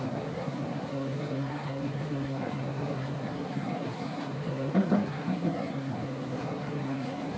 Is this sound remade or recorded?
remade